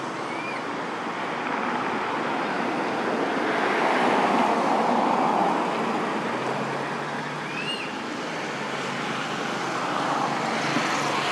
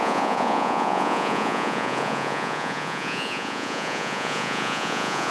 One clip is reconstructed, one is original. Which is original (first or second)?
first